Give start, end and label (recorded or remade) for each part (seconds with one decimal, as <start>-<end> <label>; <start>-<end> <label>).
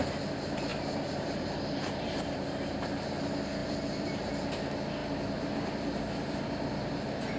0.0-0.7 recorded; 0.7-3.1 remade; 3.1-3.6 recorded; 3.6-4.3 remade; 4.3-7.4 recorded